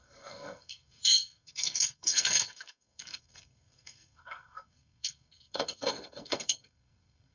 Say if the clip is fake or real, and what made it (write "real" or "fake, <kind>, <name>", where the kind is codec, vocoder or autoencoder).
fake, codec, SNAC